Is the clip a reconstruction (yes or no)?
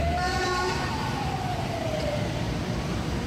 yes